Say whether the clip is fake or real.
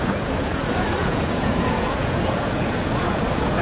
fake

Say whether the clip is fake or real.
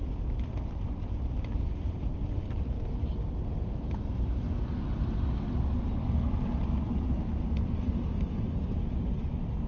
real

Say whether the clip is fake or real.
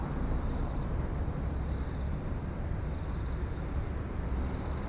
real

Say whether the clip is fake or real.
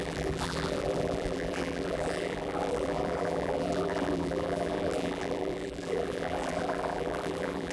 fake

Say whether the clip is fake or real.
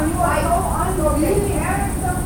real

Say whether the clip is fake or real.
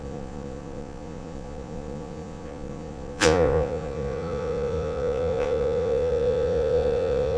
fake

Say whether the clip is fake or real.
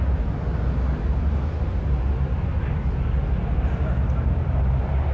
real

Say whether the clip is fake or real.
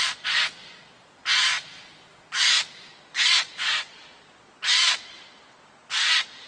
fake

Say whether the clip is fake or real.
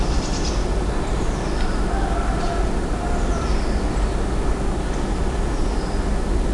real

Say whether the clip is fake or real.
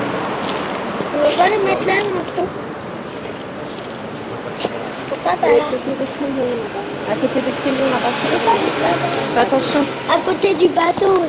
real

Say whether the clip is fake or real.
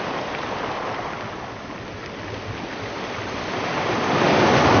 real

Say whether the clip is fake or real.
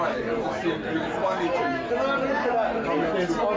real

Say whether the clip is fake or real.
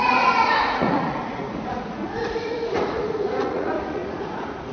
fake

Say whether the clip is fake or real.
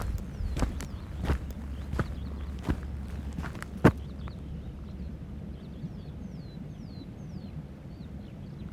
real